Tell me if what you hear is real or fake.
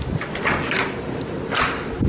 real